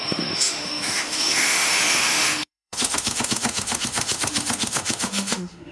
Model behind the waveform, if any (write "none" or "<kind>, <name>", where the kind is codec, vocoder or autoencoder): autoencoder, DAC-VAE